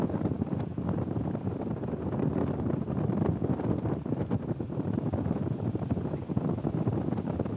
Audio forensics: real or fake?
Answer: fake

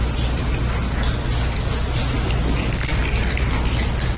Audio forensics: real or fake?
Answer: real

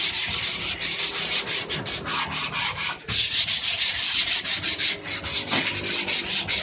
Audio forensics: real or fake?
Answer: real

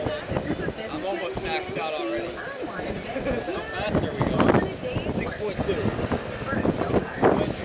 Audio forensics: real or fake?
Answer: real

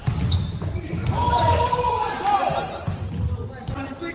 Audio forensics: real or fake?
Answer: real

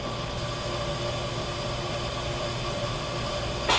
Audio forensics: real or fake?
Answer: real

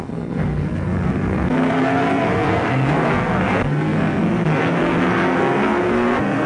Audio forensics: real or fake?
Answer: fake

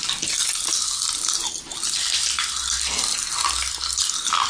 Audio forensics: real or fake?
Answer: real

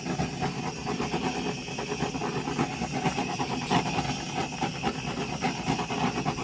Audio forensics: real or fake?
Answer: real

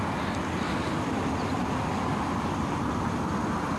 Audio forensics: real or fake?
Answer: real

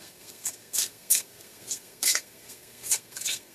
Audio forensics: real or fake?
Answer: fake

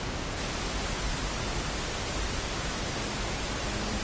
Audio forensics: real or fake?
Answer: real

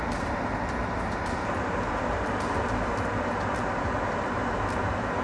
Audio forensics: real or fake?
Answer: fake